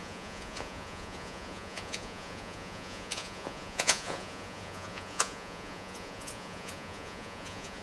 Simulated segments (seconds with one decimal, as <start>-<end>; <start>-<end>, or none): 0.0-7.8